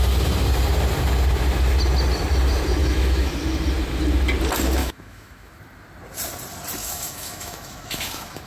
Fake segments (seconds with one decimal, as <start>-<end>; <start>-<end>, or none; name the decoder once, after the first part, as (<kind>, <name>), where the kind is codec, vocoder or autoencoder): 2.8-3.3 (autoencoder, DAC-VAE); 4.8-5.6; 6.8-8.5